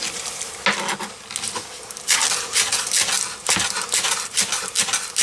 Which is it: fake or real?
real